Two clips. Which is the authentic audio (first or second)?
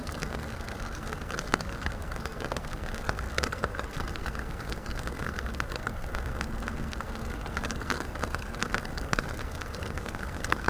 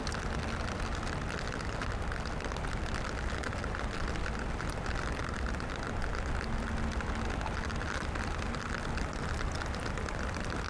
second